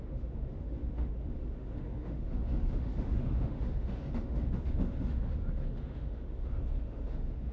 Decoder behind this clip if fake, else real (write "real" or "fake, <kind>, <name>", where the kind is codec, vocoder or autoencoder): fake, autoencoder, DAC-VAE